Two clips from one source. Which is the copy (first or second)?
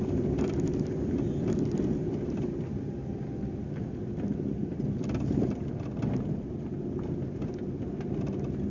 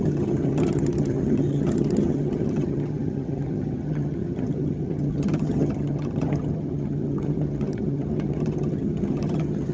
second